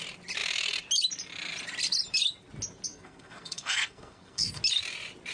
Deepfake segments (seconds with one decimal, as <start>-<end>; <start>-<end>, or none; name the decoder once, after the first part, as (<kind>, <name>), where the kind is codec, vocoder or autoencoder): 2.9-4.6 (codec, SNAC)